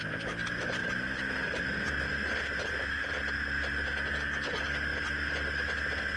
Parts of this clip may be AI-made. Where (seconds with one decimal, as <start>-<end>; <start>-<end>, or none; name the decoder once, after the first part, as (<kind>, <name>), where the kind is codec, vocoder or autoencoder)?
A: 0.8-1.9 (vocoder, BigVGAN v2); 2.6-3.2